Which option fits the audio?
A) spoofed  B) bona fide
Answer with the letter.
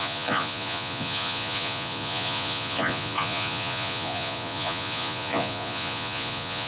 A